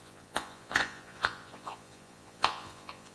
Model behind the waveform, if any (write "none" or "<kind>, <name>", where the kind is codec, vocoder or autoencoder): vocoder, Vocos